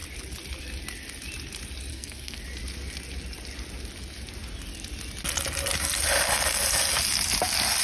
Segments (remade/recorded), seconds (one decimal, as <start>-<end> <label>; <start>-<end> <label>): 0.0-1.9 recorded; 1.9-2.4 remade; 2.4-7.8 recorded